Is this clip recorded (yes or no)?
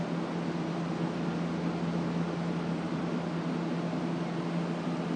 yes